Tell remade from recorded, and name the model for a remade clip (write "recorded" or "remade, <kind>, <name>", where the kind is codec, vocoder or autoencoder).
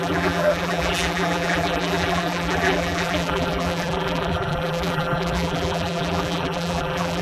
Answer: remade, vocoder, BigVGAN v2